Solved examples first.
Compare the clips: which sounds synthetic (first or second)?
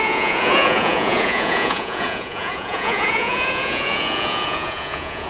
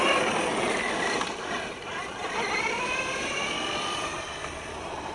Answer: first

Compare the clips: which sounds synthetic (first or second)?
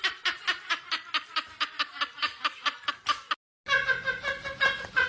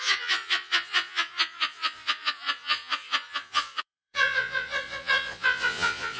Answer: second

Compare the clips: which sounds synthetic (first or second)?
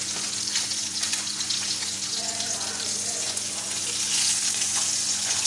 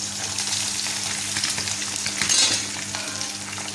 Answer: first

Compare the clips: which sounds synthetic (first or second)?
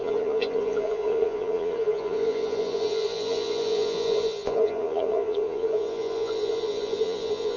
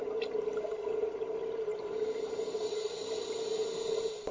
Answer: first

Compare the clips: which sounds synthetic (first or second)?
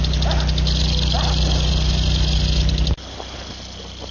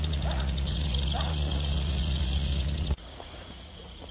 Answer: second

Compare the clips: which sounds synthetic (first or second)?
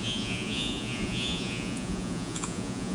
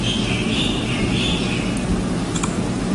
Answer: first